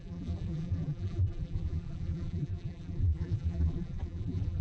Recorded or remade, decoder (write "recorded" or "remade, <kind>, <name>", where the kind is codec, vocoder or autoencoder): remade, vocoder, BigVGAN v2